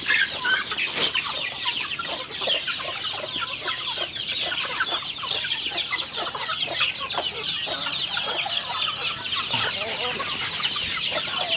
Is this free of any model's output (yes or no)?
yes